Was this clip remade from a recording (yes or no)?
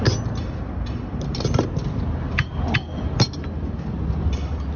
no